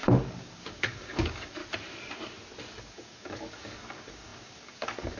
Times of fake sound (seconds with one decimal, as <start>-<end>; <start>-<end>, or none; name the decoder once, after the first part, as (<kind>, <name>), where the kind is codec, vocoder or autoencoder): 0.0-1.6 (codec, DAC); 2.8-5.2